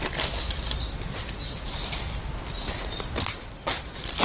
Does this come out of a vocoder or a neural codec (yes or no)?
no